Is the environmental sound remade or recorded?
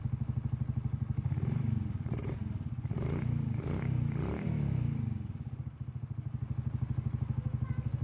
recorded